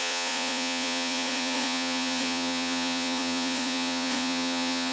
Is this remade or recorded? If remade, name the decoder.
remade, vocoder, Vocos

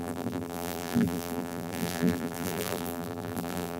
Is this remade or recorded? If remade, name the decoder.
remade, vocoder, BigVGAN v2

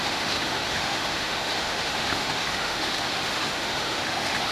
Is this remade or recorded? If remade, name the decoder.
remade, autoencoder, DAC-VAE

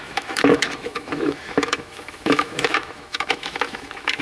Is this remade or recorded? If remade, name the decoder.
remade, autoencoder, DAC-VAE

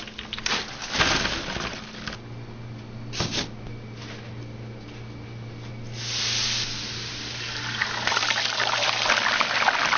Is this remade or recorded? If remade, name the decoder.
recorded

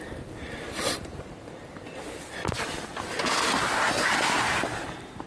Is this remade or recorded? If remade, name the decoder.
remade, vocoder, BigVGAN v2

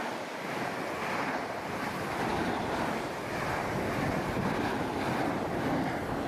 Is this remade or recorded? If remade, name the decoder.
recorded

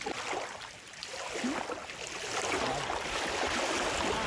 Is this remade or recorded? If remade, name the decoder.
recorded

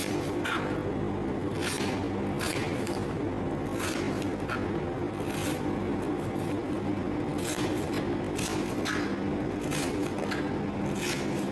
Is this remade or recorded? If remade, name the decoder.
recorded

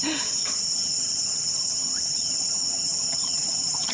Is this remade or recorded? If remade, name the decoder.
remade, vocoder, HiFi-GAN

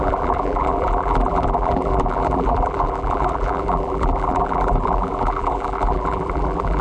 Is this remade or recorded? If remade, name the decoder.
remade, vocoder, BigVGAN v2